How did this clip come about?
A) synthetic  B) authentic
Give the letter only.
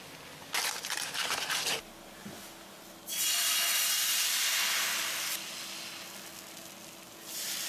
B